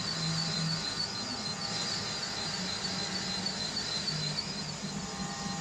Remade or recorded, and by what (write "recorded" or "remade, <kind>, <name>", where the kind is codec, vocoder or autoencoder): recorded